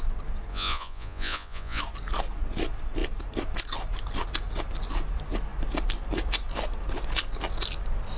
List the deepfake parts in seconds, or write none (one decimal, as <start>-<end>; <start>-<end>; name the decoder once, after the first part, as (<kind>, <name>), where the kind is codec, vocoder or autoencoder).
0.5-1.8 (vocoder, Vocos)